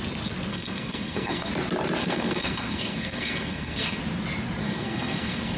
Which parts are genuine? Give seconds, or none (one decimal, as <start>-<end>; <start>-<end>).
0.0-0.5; 1.5-2.0; 4.0-4.6